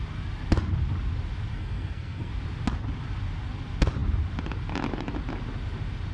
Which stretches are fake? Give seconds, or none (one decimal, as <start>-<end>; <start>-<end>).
1.5-2.3

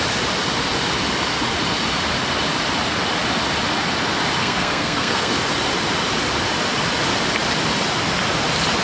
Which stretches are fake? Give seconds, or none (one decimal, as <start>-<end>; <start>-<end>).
4.4-5.3

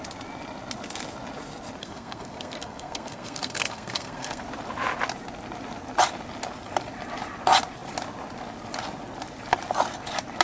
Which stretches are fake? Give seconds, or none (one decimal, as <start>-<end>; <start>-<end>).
1.8-4.4

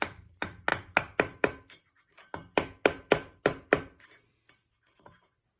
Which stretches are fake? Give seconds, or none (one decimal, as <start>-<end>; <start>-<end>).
none